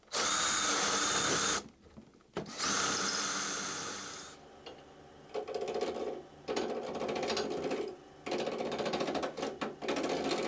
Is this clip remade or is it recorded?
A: recorded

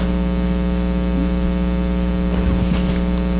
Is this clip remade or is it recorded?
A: recorded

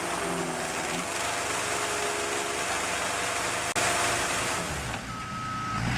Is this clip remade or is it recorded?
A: recorded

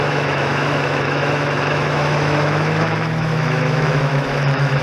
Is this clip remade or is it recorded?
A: remade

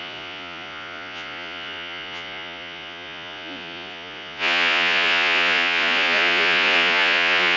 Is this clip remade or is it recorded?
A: remade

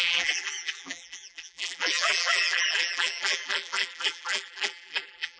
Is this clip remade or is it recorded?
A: remade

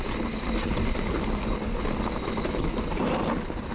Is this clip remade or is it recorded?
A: recorded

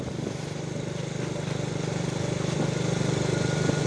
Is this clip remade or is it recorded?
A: recorded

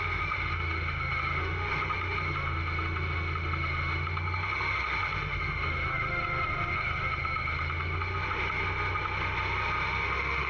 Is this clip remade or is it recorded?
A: remade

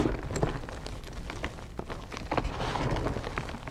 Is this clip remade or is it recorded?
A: recorded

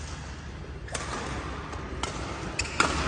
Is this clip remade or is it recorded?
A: recorded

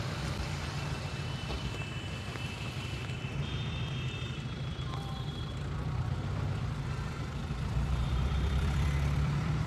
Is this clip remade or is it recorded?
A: remade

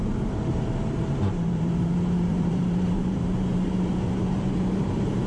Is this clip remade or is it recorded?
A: remade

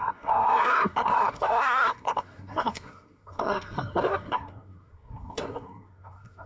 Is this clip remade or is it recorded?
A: remade